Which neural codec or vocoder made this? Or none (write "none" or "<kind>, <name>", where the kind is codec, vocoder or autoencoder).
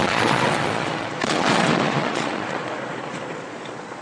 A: vocoder, Vocos